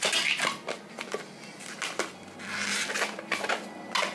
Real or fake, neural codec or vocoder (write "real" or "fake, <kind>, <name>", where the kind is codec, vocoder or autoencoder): real